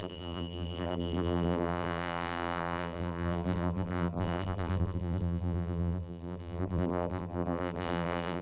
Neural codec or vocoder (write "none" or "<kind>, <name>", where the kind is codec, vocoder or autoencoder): vocoder, BigVGAN v2